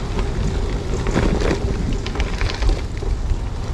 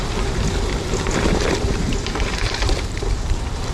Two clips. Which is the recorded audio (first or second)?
first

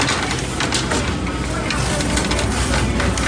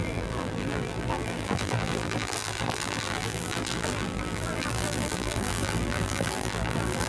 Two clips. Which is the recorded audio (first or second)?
first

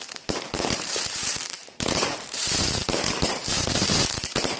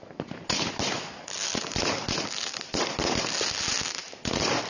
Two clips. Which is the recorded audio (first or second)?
second